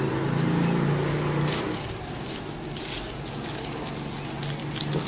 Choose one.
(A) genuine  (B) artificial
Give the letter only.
A